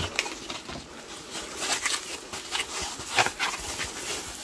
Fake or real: real